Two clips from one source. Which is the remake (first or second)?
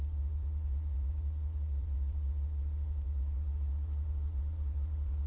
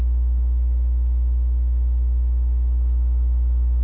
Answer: first